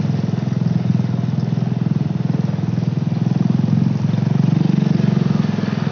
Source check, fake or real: real